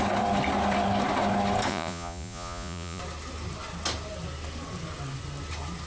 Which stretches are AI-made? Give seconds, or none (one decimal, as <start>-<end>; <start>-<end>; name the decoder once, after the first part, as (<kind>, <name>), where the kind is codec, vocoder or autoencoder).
1.7-3.0 (vocoder, Vocos)